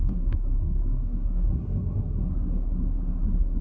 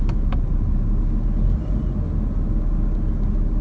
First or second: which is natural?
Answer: second